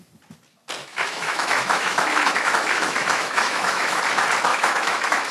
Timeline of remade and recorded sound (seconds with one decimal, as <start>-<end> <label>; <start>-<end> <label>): 0.0-0.8 recorded; 0.8-4.0 remade; 4.0-4.5 recorded; 4.5-5.3 remade